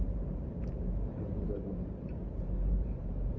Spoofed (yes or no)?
yes